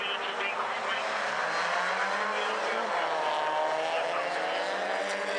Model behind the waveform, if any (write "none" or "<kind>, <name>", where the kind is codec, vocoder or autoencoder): none